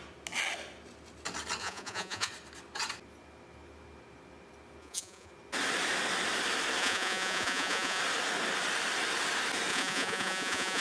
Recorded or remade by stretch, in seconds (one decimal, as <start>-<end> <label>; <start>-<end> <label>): 0.0-1.6 recorded; 1.6-2.3 remade; 2.3-4.8 recorded; 4.8-5.3 remade; 5.3-6.8 recorded; 6.8-8.0 remade; 8.0-9.7 recorded; 9.7-10.8 remade